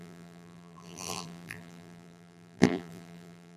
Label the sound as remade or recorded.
remade